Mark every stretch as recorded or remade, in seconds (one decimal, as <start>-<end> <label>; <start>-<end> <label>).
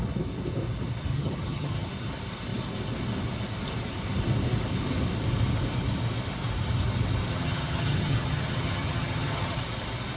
0.0-1.1 recorded; 1.1-1.9 remade; 1.9-7.3 recorded; 7.3-9.6 remade; 9.6-10.2 recorded